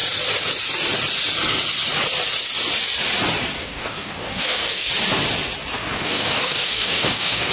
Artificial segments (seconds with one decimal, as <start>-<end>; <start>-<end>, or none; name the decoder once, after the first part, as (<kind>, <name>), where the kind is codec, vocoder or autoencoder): 3.6-4.9 (codec, DAC); 5.8-7.5